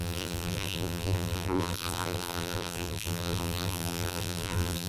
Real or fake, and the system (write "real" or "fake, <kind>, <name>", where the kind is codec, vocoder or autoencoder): fake, vocoder, BigVGAN v2